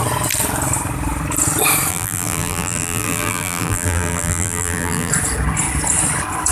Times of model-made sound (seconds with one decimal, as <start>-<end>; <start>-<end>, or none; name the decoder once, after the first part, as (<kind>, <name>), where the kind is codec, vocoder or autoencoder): 1.9-5.1 (vocoder, BigVGAN v2)